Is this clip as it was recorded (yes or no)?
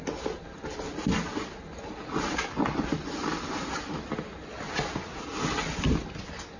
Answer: yes